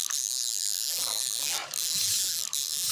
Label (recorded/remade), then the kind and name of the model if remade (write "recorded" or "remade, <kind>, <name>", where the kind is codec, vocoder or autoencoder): recorded